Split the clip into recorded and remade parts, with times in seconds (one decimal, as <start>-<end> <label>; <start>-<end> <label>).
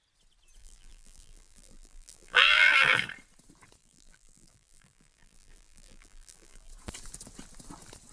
0.0-0.6 recorded; 0.6-3.0 remade; 3.0-3.8 recorded; 3.8-6.7 remade; 6.7-8.1 recorded